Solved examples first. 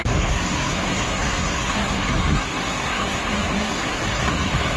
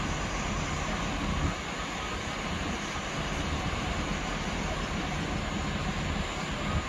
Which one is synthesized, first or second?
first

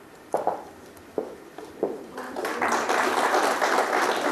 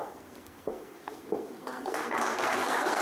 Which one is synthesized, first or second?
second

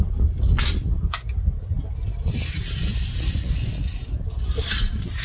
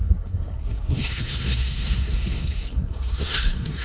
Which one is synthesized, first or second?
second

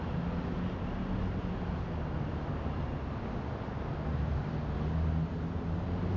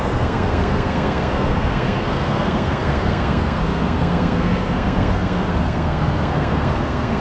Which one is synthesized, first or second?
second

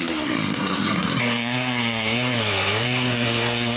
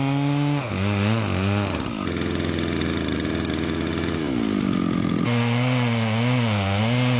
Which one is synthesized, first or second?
first